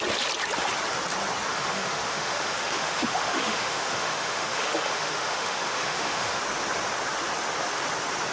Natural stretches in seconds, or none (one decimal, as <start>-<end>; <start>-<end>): 0.0-1.5; 6.4-8.3